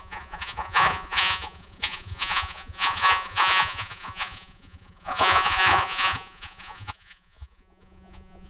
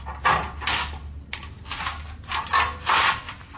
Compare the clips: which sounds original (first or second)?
second